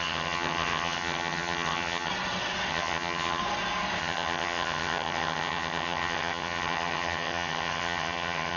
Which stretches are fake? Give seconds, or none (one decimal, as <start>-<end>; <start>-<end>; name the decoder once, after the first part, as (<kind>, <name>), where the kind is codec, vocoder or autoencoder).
0.0-2.1 (vocoder, HiFi-GAN); 2.7-3.4; 4.0-8.6